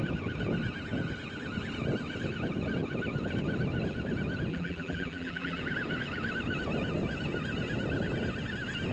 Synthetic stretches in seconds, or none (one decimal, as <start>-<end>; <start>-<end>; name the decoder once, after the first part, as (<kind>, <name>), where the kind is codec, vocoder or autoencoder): 4.5-5.6 (vocoder, BigVGAN v2)